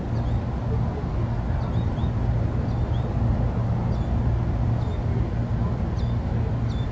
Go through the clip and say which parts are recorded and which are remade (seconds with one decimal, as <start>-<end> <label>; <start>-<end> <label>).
0.0-6.9 recorded